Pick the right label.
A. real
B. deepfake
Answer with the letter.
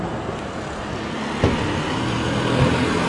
A